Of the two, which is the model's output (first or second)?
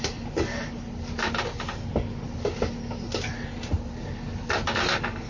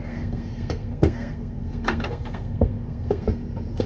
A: second